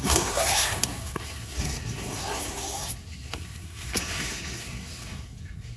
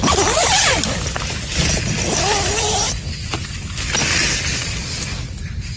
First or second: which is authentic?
second